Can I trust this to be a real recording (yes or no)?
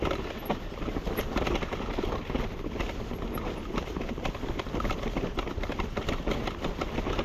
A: yes